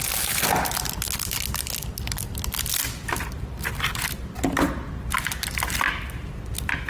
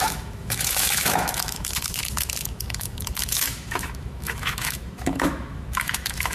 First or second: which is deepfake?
second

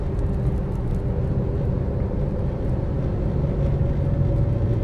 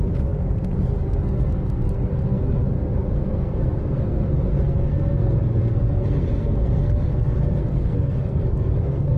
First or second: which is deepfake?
second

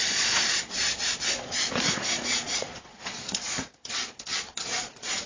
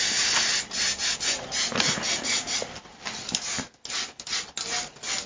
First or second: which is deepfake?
first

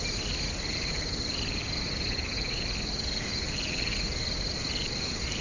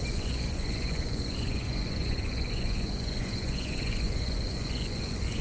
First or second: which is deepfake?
second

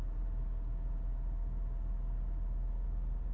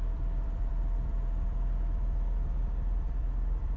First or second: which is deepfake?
second